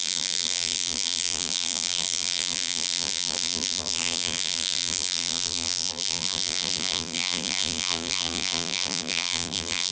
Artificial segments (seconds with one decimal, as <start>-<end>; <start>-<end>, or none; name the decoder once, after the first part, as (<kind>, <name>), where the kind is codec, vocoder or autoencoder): 0.0-9.9 (vocoder, BigVGAN v2)